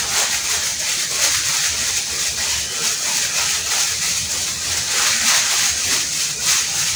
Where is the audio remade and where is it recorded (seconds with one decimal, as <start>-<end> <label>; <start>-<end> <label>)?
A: 0.0-0.7 recorded; 0.7-1.9 remade; 1.9-7.0 recorded